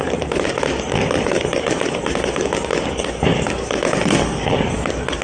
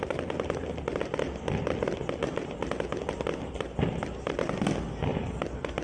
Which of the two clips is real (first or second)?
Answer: second